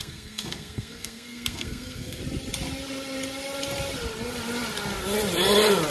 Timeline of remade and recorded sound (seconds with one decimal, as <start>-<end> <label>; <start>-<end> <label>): 0.0-2.2 remade; 2.2-5.9 recorded